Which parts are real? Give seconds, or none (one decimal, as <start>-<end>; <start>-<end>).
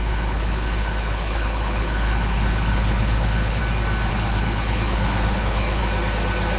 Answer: 3.6-4.1; 5.8-6.6